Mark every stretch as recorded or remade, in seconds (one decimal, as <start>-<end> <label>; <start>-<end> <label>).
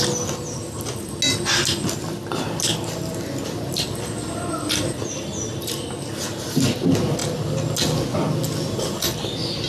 0.0-9.7 recorded